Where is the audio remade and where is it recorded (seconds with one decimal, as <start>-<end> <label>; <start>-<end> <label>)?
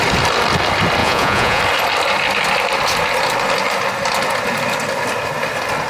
0.0-1.0 recorded; 1.0-1.6 remade; 1.6-5.9 recorded